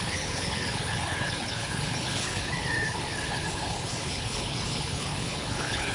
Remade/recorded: remade